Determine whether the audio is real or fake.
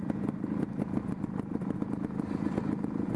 real